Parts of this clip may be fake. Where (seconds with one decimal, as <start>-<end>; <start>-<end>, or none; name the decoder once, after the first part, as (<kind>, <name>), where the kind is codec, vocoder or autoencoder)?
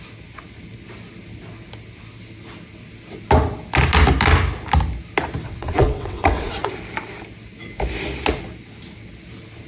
5.4-6.7 (vocoder, WaveNeXt)